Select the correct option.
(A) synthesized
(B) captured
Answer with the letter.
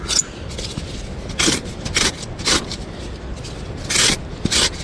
B